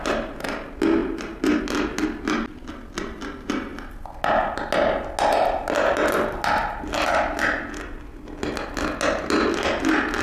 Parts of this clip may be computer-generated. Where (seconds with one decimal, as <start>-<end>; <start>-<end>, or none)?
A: none